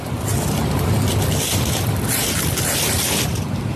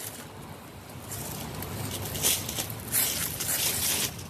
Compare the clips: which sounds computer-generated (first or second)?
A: first